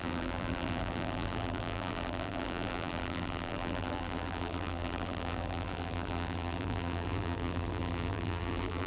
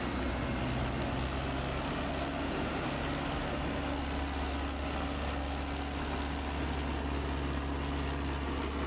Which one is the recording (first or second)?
second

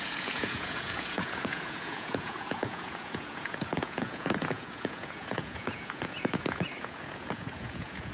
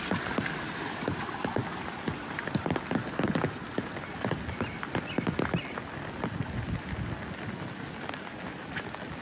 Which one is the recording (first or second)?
second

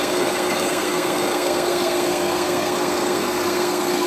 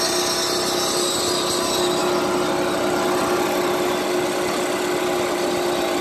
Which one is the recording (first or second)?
second